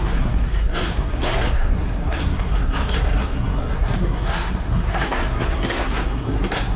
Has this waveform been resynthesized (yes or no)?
yes